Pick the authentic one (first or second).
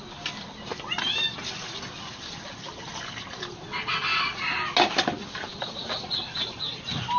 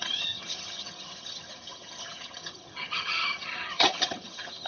first